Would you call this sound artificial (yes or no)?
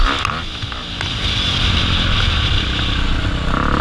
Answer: no